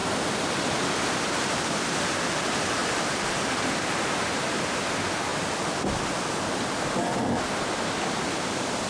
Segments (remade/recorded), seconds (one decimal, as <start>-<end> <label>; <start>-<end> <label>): 0.0-0.7 remade; 0.7-8.9 recorded